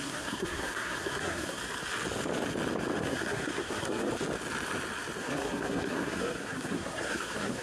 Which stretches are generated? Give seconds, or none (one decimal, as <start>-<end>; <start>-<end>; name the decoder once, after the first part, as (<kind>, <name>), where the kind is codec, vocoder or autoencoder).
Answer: 0.0-1.6 (codec, SNAC); 3.0-4.1; 5.2-7.6